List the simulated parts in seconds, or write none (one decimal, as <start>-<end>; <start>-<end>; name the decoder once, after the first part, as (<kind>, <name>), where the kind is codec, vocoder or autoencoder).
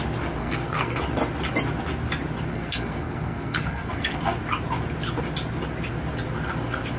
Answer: 0.4-1.0 (codec, SNAC); 2.5-4.2